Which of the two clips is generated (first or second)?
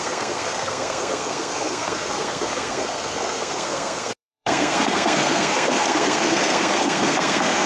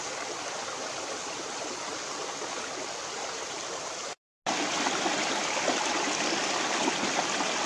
first